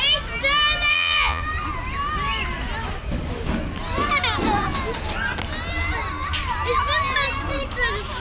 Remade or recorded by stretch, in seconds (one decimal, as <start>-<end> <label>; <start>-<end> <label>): 0.0-0.9 recorded; 0.9-1.4 remade; 1.4-8.2 recorded